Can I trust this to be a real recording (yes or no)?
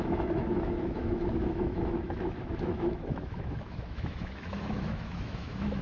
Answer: no